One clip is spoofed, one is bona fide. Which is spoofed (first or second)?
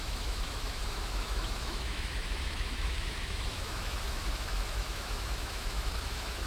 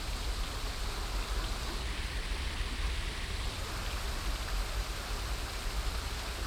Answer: first